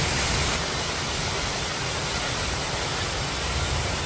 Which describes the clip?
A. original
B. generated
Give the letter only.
A